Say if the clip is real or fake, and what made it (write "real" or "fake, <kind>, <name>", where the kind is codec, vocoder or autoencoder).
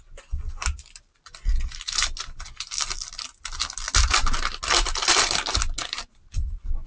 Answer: real